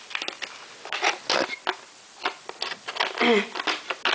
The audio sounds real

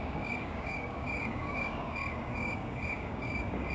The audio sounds fake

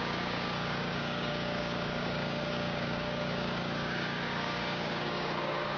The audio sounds fake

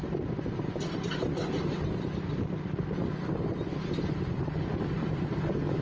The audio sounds real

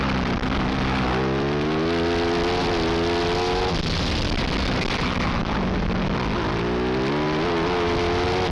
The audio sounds real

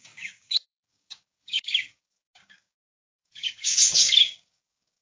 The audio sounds fake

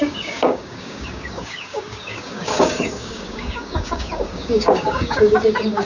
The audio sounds fake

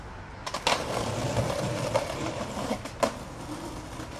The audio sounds real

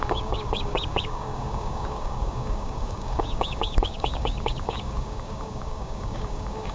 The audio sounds fake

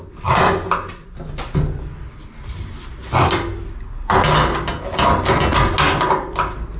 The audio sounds real